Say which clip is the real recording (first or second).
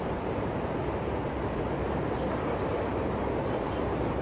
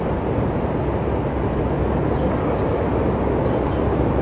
second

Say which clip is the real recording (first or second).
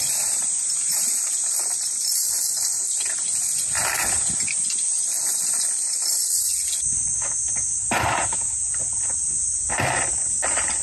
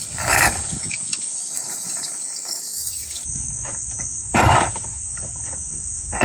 first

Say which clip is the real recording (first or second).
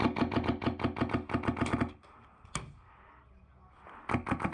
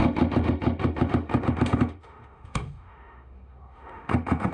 first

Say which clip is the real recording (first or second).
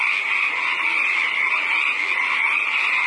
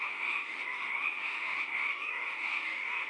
first